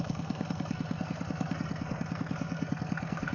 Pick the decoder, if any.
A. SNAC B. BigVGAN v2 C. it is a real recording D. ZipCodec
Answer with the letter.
A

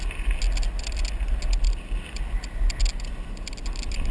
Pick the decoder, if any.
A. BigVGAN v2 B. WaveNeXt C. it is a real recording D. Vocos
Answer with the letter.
C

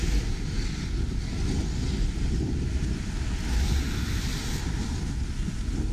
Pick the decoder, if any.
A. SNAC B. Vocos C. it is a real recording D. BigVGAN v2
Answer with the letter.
C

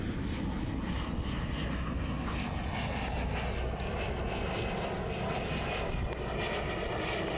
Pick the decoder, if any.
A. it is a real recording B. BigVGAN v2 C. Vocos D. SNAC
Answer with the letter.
A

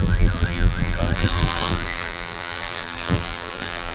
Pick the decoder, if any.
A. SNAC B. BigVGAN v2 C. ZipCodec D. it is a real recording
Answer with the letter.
B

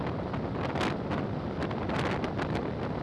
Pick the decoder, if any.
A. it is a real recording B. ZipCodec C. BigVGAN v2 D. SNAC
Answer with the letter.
A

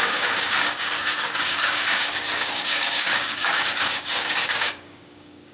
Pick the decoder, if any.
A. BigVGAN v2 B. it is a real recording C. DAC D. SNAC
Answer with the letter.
C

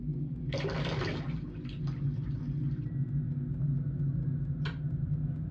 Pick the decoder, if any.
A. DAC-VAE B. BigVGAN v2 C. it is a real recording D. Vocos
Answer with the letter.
C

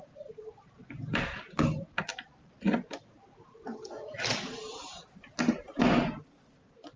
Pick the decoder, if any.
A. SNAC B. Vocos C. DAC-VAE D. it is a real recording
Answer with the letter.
D